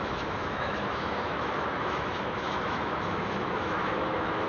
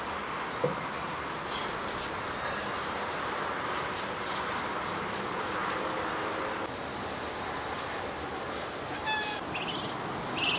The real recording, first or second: second